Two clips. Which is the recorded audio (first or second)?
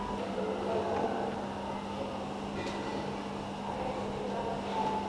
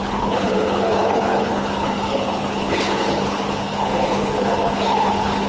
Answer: first